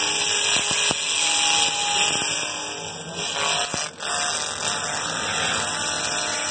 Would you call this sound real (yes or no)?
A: yes